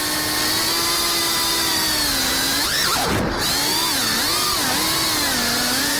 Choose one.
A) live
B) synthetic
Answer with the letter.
A